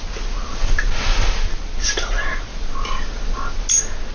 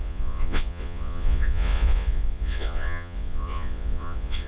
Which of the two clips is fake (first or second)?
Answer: second